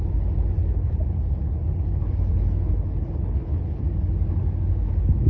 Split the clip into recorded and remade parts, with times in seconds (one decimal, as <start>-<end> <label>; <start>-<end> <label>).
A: 0.0-0.6 recorded; 0.6-3.8 remade; 3.8-5.3 recorded